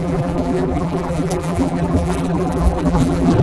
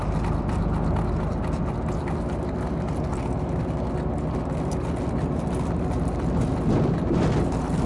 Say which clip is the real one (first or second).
second